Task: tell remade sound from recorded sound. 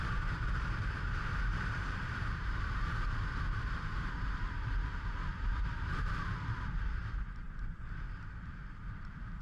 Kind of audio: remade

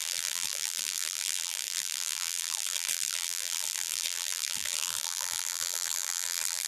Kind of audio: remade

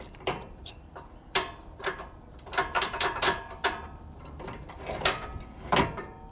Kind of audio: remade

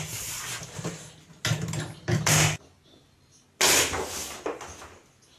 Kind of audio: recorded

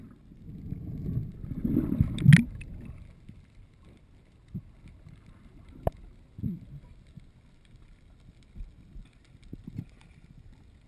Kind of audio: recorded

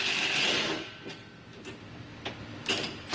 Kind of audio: recorded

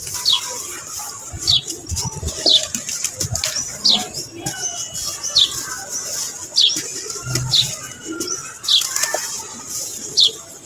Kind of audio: recorded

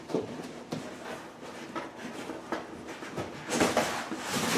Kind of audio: remade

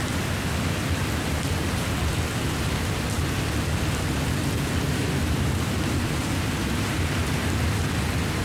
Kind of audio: recorded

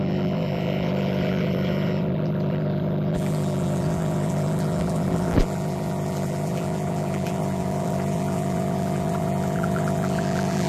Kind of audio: remade